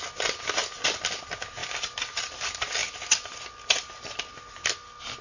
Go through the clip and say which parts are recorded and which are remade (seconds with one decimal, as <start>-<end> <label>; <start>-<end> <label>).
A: 0.0-5.2 recorded

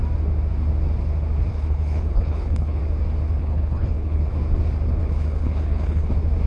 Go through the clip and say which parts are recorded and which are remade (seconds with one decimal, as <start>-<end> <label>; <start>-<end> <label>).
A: 0.0-1.5 recorded; 1.5-2.8 remade; 2.8-3.4 recorded; 3.4-4.3 remade; 4.3-5.0 recorded; 5.0-6.1 remade; 6.1-6.5 recorded

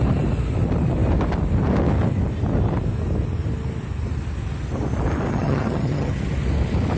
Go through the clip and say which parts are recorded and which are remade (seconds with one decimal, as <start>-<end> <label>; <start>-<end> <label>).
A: 0.0-5.3 recorded; 5.3-6.2 remade; 6.2-7.0 recorded

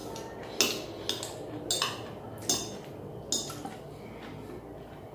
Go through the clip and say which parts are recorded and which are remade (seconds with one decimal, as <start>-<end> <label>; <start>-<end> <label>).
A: 0.0-5.1 recorded

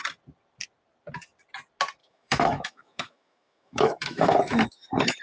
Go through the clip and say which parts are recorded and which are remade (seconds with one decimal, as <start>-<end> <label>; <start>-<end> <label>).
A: 0.0-2.0 recorded; 2.0-5.2 remade

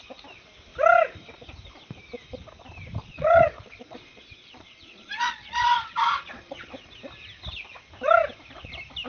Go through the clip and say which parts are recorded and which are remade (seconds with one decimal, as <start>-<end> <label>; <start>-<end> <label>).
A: 0.0-3.0 recorded; 3.0-6.9 remade; 6.9-9.1 recorded

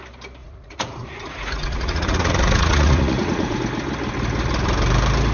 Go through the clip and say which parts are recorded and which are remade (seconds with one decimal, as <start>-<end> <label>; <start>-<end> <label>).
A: 0.0-0.4 recorded; 0.4-3.6 remade; 3.6-5.3 recorded

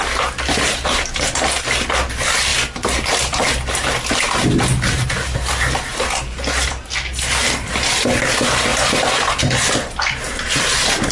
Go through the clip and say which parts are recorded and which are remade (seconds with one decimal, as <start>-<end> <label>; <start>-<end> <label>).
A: 0.0-5.9 recorded; 5.9-6.8 remade; 6.8-11.1 recorded